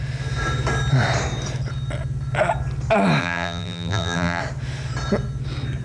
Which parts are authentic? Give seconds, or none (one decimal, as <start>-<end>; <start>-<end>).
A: 0.0-3.2; 4.4-5.8